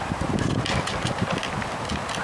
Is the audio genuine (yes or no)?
yes